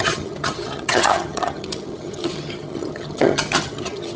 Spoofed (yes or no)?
yes